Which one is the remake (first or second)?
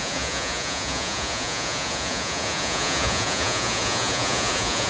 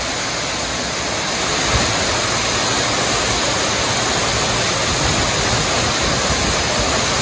first